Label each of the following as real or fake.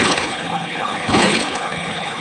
fake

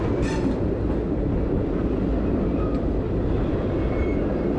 real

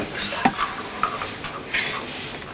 real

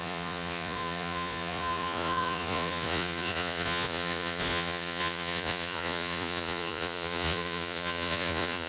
fake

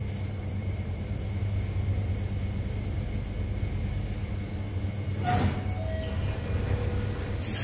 real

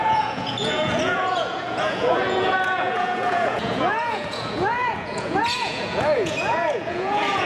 fake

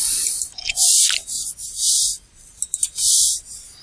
real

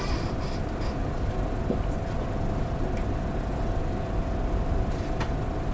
real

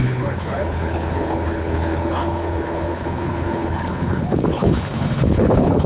fake